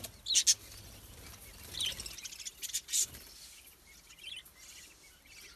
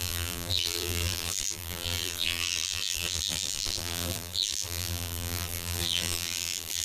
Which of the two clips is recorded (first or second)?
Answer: first